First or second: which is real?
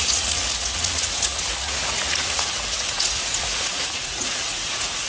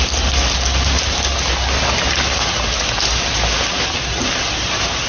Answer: second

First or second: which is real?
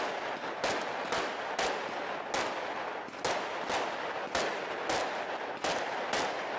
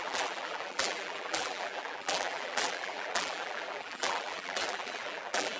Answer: first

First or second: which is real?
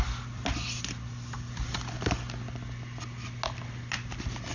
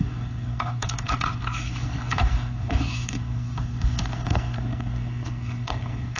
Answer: first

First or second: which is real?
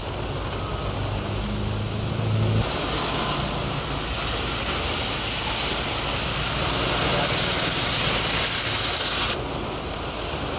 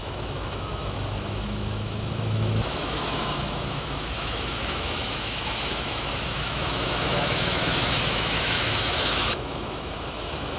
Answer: first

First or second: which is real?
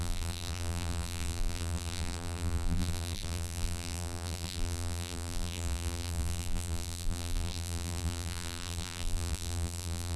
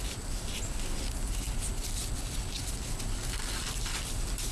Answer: second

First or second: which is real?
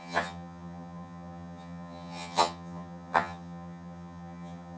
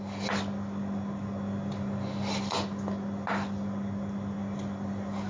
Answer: second